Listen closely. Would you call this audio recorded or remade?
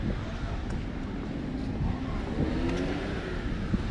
recorded